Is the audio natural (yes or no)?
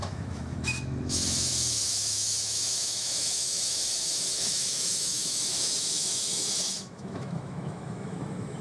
no